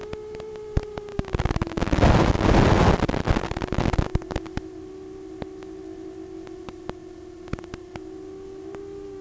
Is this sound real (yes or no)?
yes